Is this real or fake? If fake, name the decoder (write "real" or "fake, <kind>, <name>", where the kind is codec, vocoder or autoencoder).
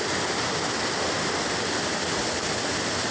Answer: real